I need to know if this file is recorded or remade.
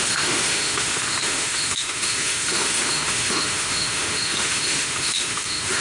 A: remade